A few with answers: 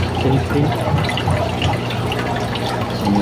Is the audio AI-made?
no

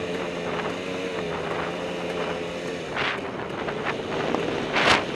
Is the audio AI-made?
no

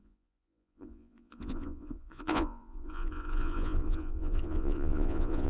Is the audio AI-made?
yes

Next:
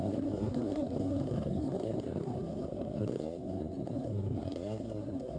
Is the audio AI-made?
yes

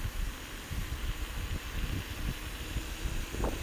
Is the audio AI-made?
yes